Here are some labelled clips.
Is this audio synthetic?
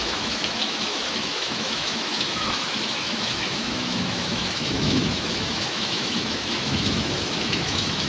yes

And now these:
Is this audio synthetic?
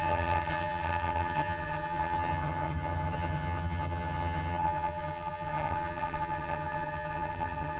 yes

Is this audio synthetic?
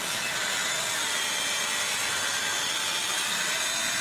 yes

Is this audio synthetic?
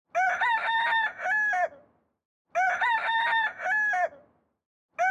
no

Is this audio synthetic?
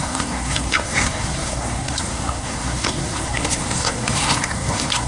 yes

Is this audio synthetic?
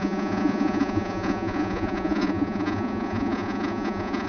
yes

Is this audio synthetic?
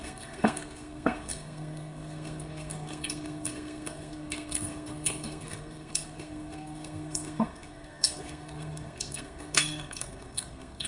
yes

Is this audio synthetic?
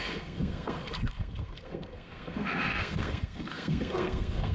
yes